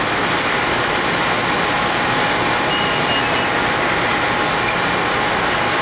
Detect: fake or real real